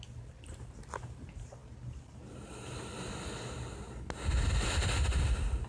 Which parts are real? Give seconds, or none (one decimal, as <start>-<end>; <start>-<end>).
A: 0.0-5.7